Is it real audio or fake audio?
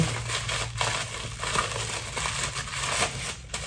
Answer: real